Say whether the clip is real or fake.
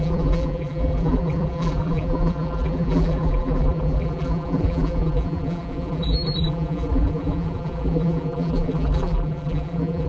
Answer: fake